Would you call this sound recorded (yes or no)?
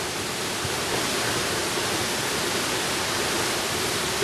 yes